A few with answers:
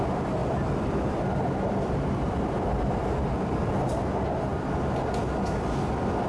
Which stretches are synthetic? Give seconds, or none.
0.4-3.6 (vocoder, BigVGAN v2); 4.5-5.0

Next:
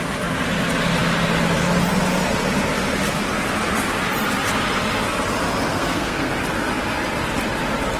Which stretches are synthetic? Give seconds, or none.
5.7-6.4 (codec, SNAC)

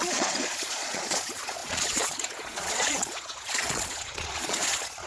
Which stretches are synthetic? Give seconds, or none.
0.0-5.1 (vocoder, Vocos)

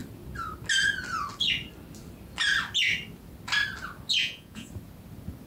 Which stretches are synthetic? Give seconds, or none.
4.2-4.7 (vocoder, Vocos)

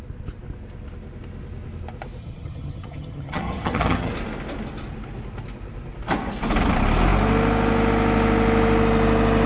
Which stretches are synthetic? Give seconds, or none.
2.2-4.1 (vocoder, HiFi-GAN)